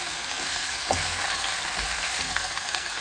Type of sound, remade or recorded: remade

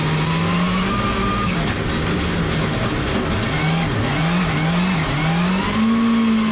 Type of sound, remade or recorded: recorded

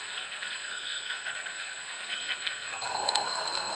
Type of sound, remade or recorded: remade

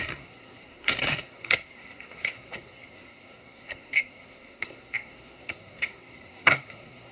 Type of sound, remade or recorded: remade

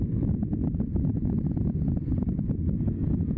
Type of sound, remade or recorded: recorded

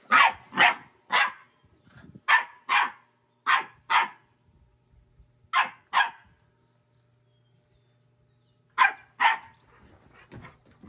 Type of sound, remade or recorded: recorded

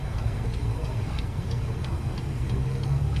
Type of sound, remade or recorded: remade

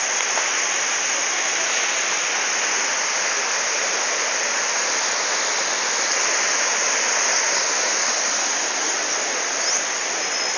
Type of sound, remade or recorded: recorded